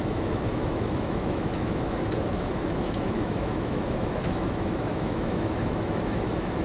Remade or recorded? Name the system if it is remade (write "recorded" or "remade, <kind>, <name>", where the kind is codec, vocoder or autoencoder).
remade, autoencoder, DAC-VAE